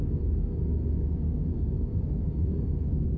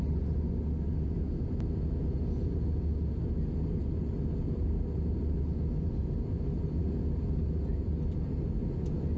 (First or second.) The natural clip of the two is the second